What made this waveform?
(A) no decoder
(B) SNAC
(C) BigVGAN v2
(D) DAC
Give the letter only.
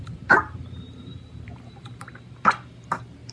C